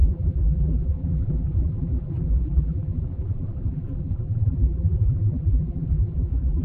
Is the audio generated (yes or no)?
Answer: yes